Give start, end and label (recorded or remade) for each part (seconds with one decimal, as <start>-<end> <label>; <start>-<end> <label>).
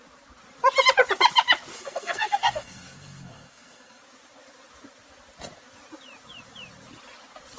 0.0-1.7 recorded; 1.7-4.0 remade; 4.0-7.6 recorded